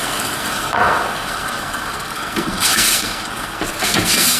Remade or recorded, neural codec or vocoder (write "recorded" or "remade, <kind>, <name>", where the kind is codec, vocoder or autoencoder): remade, codec, SNAC